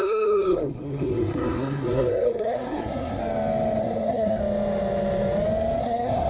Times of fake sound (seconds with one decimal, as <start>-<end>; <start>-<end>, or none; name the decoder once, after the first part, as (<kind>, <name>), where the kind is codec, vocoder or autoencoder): 0.0-3.2 (codec, SNAC); 3.8-4.4; 5.8-6.3